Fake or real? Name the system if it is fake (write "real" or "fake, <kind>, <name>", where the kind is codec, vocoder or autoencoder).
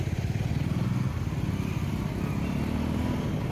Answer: real